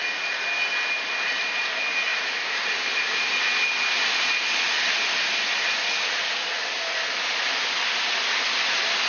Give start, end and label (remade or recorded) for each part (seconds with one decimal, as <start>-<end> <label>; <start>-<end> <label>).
0.0-2.1 recorded; 2.1-3.2 remade; 3.2-9.1 recorded